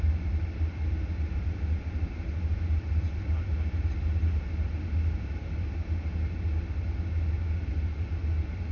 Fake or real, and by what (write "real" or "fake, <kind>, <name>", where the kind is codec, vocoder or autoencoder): real